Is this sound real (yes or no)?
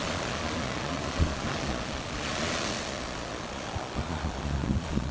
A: no